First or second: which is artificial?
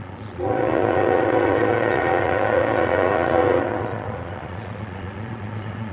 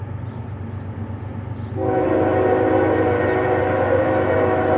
first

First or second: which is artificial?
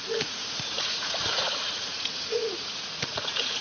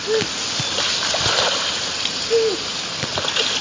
first